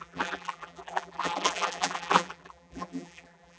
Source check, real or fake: fake